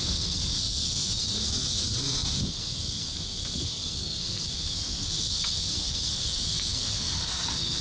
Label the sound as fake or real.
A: fake